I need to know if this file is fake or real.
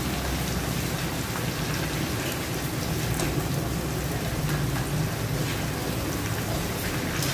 real